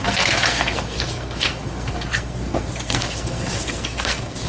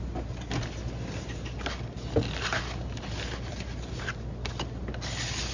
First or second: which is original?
second